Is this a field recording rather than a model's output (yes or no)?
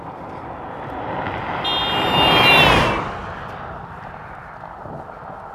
yes